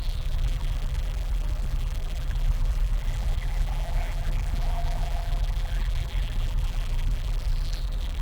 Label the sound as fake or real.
fake